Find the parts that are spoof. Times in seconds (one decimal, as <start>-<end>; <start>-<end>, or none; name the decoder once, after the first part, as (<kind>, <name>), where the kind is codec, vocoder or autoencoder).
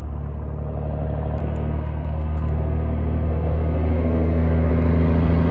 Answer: 1.4-4.7 (codec, SNAC)